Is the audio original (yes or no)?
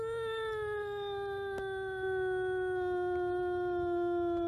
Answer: yes